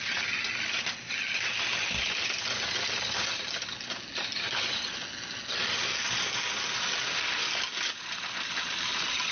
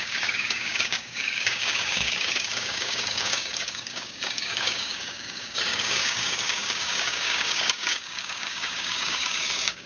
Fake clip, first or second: second